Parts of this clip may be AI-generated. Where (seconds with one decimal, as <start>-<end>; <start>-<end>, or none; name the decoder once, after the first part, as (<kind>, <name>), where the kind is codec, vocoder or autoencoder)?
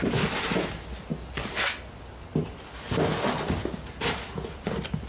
none